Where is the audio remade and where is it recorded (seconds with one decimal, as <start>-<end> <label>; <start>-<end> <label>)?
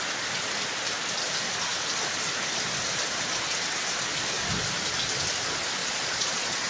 0.0-5.8 recorded; 5.8-6.7 remade